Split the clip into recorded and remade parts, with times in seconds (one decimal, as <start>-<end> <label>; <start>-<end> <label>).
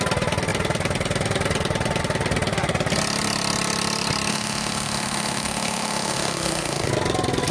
0.0-4.3 recorded; 4.3-6.9 remade; 6.9-7.5 recorded